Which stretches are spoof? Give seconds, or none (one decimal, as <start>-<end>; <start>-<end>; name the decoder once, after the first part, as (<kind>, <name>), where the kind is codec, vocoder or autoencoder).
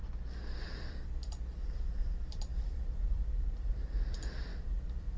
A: 0.0-5.2 (vocoder, BigVGAN v2)